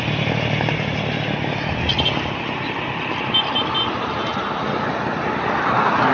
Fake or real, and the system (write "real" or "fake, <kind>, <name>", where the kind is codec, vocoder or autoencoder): real